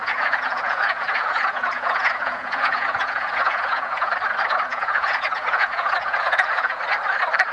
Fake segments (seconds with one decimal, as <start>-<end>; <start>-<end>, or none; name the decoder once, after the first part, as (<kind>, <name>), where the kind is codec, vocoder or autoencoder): 0.0-4.1 (vocoder, Vocos); 4.7-6.8